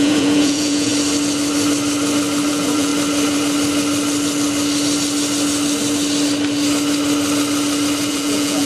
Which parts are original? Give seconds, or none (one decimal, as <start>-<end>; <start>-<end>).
0.9-2.5; 2.9-8.1